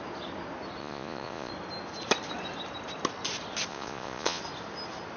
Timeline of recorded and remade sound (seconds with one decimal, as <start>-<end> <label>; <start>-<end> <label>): 0.0-0.8 recorded; 0.8-1.5 remade; 1.5-3.7 recorded; 3.7-4.4 remade; 4.4-5.2 recorded